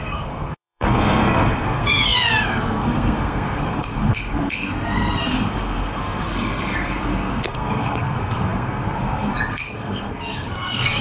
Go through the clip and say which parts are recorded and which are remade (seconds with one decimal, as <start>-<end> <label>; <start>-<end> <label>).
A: 0.0-11.0 remade